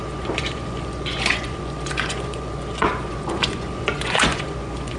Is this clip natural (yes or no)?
no